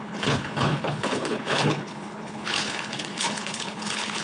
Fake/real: fake